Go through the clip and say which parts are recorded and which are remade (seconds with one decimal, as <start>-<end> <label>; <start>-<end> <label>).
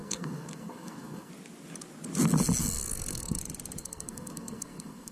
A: 0.0-1.3 remade; 1.3-2.6 recorded; 2.6-3.4 remade; 3.4-3.8 recorded; 3.8-5.1 remade